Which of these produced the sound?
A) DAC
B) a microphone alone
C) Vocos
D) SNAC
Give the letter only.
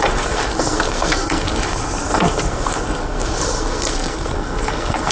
D